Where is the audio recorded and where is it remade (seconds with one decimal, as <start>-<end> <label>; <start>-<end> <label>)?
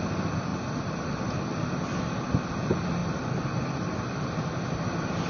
0.0-0.5 recorded; 0.5-2.1 remade; 2.1-3.0 recorded; 3.0-4.4 remade; 4.4-5.3 recorded